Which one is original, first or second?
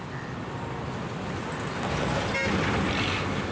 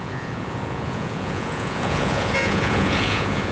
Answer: first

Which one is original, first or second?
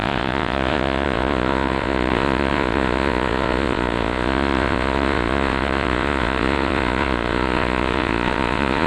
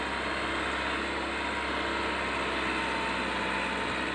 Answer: second